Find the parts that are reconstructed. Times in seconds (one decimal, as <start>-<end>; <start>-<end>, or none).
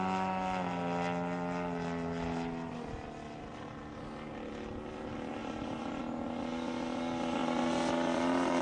5.4-6.0; 7.4-7.9